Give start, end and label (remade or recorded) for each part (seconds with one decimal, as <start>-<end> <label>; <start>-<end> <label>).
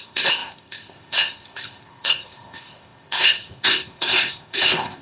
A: 0.0-5.0 remade